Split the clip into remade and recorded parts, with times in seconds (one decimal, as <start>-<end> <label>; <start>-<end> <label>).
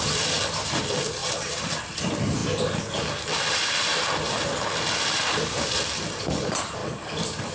0.0-7.5 remade